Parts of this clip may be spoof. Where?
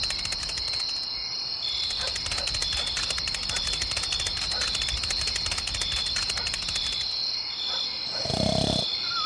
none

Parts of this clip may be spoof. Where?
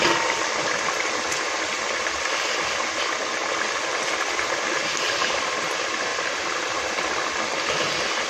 none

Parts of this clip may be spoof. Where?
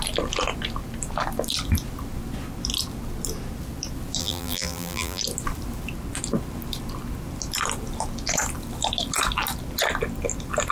4.2-5.2 (vocoder, BigVGAN v2)